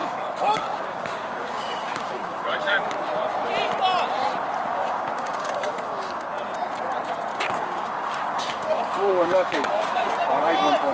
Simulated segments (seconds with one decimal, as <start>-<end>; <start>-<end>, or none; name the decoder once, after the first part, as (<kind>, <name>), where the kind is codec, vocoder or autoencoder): 0.0-2.9 (codec, DAC); 4.7-6.3; 7.3-10.1